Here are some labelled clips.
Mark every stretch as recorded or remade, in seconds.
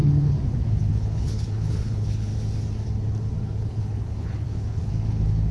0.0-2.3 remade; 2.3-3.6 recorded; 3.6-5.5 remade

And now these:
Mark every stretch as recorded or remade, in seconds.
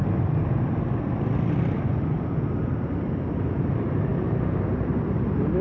0.0-5.6 recorded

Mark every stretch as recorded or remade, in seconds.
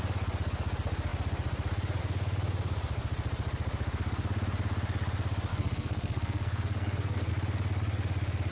0.0-5.5 recorded; 5.5-7.3 remade; 7.3-8.5 recorded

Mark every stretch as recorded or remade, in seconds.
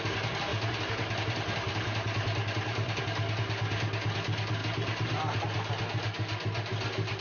0.0-0.5 recorded; 0.5-3.0 remade; 3.0-4.6 recorded; 4.6-5.4 remade; 5.4-7.2 recorded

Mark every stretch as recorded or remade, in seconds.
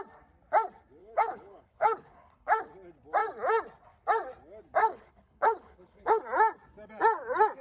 0.0-1.0 recorded; 1.0-2.7 remade; 2.7-4.8 recorded; 4.8-6.2 remade; 6.2-7.6 recorded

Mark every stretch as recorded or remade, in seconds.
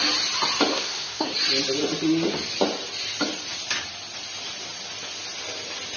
0.0-0.7 recorded; 0.7-1.3 remade; 1.3-6.0 recorded